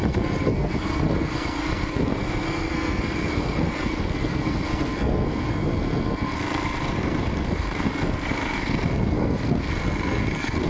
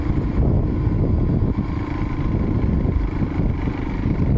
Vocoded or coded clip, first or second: first